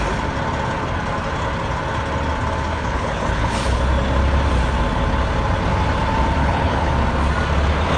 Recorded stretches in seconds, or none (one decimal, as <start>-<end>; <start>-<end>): 0.0-2.7; 3.8-6.4; 6.9-8.0